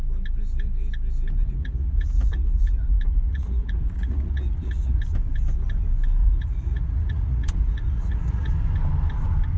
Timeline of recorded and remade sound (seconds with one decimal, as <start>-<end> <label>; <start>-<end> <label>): 0.0-1.6 recorded; 1.6-5.0 remade; 5.0-6.2 recorded; 6.2-8.5 remade; 8.5-9.6 recorded